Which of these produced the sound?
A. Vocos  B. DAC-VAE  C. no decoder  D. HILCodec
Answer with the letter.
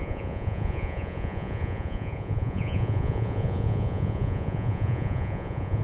A